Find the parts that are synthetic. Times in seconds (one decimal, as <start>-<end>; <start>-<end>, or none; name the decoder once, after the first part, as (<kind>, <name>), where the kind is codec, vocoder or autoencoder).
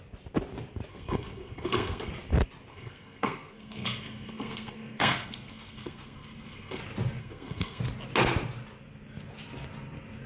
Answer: 0.9-2.1 (codec, SNAC); 2.7-6.8; 7.2-7.8